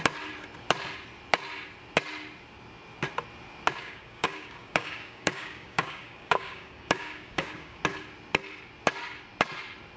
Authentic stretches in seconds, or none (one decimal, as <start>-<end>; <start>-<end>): 0.0-3.8; 7.8-10.0